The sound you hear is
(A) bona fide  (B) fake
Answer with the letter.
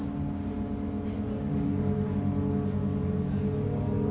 A